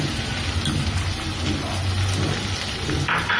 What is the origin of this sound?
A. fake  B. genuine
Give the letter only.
B